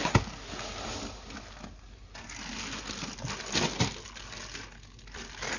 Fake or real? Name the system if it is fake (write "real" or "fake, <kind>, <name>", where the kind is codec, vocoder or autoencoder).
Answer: real